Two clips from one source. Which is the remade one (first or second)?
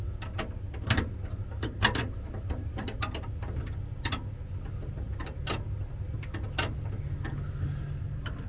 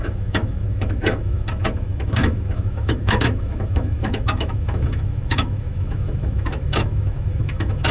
second